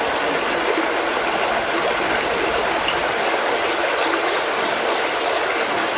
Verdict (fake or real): real